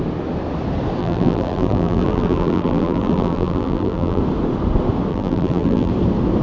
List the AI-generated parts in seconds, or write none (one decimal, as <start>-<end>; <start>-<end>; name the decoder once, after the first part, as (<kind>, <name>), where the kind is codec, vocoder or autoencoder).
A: 1.0-4.2 (vocoder, BigVGAN v2); 5.1-5.9